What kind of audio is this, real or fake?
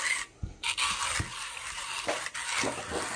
real